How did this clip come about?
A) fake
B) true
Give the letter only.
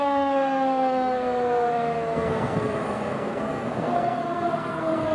A